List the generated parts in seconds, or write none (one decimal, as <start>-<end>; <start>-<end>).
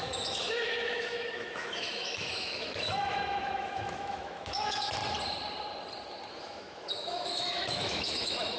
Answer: 0.0-5.0; 6.3-8.6